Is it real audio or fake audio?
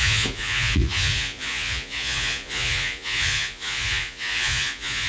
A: fake